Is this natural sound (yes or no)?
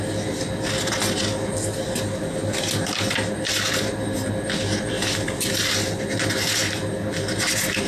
yes